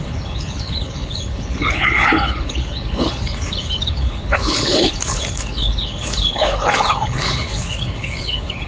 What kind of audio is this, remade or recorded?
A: remade